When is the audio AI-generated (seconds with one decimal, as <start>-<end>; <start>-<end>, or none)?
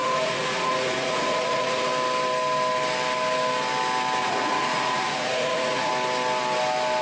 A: 0.0-1.9; 4.2-5.9